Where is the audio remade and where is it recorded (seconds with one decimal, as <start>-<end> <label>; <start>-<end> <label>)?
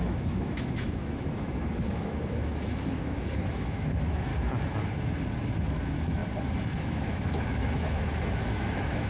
0.0-4.3 remade; 4.3-5.7 recorded; 5.7-6.2 remade; 6.2-6.8 recorded; 6.8-9.1 remade